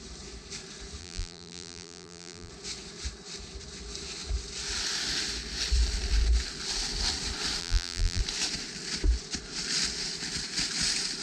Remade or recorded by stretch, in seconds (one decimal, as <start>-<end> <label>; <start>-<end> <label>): 0.0-1.0 recorded; 1.0-2.5 remade; 2.5-7.6 recorded; 7.6-8.2 remade; 8.2-11.2 recorded